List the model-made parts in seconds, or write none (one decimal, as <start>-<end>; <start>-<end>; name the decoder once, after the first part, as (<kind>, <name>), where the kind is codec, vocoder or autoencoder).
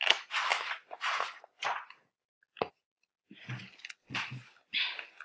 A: none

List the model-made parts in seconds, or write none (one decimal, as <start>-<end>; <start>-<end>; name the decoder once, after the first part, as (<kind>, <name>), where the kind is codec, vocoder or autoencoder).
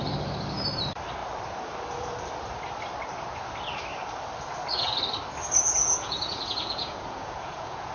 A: 5.8-7.9 (vocoder, Vocos)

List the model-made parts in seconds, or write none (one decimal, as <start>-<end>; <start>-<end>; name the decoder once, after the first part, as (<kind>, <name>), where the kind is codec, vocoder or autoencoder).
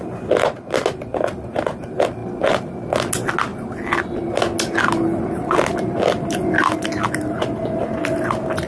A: none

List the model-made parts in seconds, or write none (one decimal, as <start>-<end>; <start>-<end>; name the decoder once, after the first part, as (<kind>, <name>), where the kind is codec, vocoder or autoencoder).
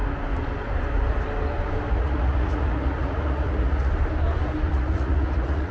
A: 1.9-3.9 (vocoder, Vocos); 4.7-5.7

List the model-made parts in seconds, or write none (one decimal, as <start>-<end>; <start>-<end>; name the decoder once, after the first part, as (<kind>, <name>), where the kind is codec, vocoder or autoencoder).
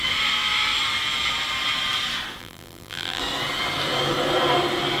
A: 2.4-3.2 (vocoder, BigVGAN v2)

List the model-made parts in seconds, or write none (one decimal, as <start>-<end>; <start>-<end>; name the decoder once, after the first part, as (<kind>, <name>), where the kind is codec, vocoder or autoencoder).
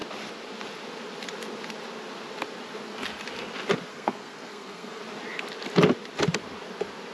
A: 3.9-5.0 (codec, SNAC)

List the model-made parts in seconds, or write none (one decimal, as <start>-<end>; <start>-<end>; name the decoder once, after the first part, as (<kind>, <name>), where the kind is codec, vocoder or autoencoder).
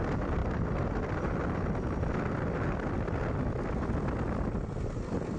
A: none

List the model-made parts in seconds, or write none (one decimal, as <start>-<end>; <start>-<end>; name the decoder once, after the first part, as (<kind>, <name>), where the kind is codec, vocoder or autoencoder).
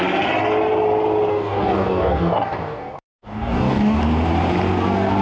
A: 1.3-4.0 (codec, DAC)